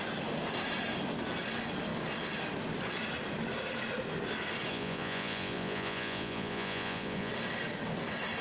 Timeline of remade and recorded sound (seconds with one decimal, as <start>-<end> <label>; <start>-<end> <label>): 0.0-4.7 recorded; 4.7-7.3 remade; 7.3-8.4 recorded